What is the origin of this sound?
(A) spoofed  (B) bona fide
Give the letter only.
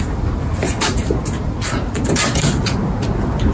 B